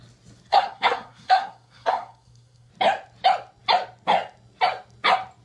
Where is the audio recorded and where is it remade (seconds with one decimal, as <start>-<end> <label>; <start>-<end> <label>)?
0.0-0.5 recorded; 0.5-2.7 remade; 2.7-5.4 recorded